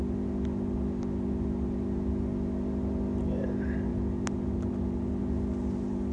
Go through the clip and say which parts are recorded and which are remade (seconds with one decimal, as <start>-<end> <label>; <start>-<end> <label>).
0.0-6.1 recorded